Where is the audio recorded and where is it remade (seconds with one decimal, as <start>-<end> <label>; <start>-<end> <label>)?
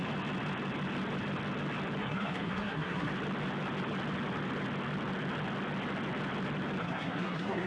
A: 0.0-2.0 recorded; 2.0-3.1 remade; 3.1-6.8 recorded; 6.8-7.7 remade